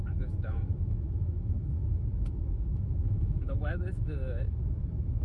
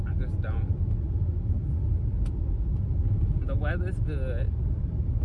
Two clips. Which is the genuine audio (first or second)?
second